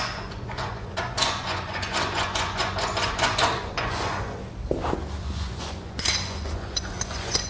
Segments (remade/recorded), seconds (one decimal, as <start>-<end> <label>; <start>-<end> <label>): 0.0-4.4 remade; 4.4-5.2 recorded; 5.2-7.5 remade